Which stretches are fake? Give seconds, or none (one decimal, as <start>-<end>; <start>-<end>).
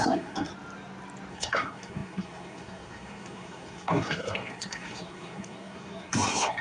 0.0-0.5; 1.3-6.6